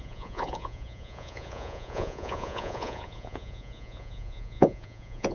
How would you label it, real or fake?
fake